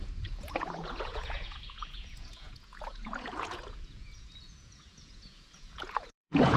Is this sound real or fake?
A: fake